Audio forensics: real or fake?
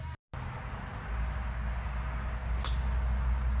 real